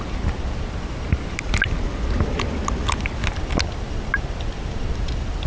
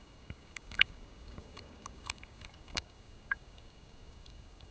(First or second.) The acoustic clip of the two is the first